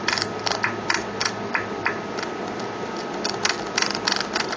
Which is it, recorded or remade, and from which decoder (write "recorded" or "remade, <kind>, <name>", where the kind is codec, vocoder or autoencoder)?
recorded